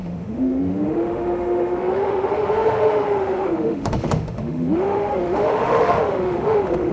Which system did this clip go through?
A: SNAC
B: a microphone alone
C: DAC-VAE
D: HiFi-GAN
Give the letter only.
C